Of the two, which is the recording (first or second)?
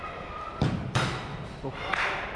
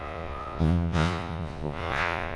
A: first